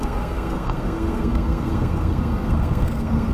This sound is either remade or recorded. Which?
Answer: remade